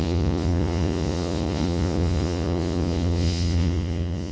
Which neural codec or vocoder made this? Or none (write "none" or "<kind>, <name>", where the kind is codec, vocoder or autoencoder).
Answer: vocoder, Vocos